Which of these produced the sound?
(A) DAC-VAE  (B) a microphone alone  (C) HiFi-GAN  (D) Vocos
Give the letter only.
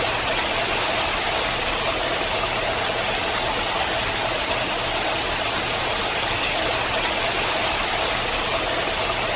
B